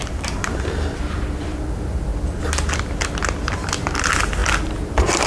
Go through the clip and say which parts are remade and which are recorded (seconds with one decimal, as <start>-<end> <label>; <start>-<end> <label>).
0.0-0.6 remade; 0.6-5.3 recorded